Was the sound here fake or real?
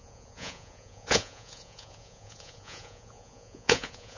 fake